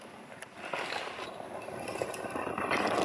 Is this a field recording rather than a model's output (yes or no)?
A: yes